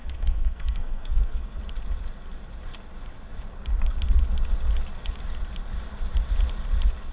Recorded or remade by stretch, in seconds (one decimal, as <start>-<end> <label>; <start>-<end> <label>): 0.0-1.6 remade; 1.6-7.1 recorded